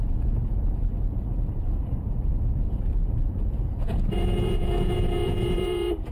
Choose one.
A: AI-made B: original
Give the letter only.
A